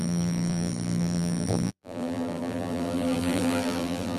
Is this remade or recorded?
remade